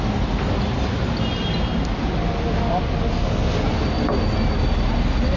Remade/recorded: recorded